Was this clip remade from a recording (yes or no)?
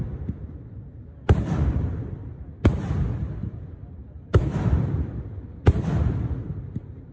no